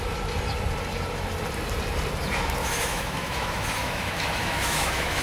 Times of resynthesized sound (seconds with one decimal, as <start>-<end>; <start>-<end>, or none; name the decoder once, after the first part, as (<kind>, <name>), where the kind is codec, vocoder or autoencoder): 2.6-5.2 (autoencoder, DAC-VAE)